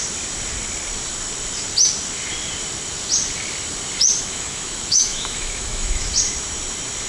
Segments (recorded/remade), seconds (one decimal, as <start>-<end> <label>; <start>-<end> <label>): 0.0-4.2 recorded; 4.2-6.1 remade; 6.1-7.1 recorded